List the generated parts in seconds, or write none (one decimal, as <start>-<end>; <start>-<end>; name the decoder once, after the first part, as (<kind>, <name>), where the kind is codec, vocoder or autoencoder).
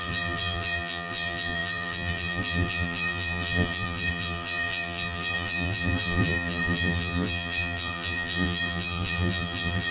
0.0-9.9 (vocoder, BigVGAN v2)